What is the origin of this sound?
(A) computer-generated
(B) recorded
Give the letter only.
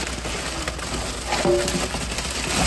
B